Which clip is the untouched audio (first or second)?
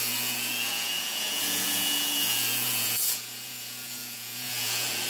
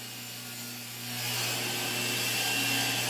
second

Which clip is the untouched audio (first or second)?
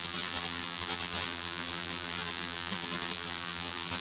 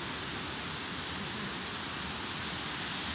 second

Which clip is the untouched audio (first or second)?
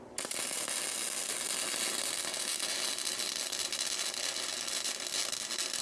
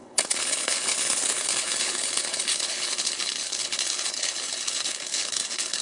first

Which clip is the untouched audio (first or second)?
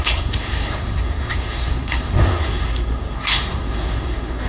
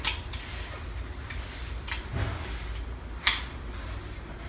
second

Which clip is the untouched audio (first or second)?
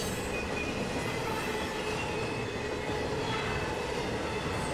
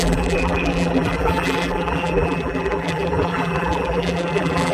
first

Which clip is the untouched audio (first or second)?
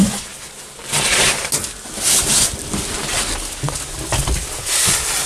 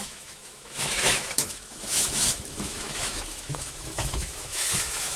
first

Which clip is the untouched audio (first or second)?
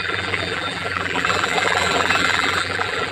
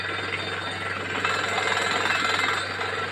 second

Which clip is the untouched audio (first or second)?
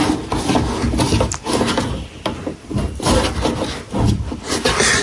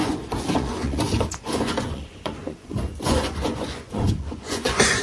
first